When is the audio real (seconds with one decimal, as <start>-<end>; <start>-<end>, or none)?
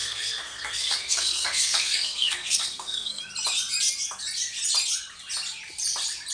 3.2-6.3